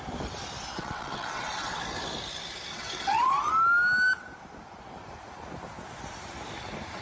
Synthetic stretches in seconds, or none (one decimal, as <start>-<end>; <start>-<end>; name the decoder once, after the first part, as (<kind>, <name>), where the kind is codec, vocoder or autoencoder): 0.7-1.8 (vocoder, WaveNeXt); 2.7-3.5